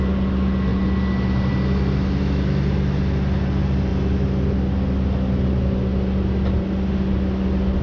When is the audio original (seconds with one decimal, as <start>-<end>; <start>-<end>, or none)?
0.0-7.8